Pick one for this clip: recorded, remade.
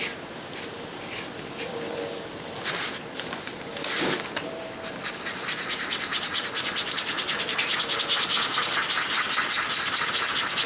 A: recorded